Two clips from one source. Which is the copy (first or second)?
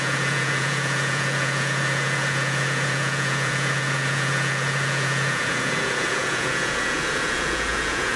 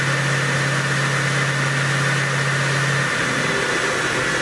first